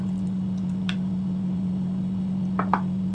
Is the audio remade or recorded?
recorded